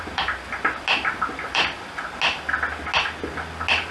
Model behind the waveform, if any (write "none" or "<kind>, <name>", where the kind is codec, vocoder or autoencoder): none